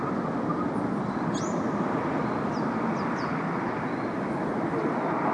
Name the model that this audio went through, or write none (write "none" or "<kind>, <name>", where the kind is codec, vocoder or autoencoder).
none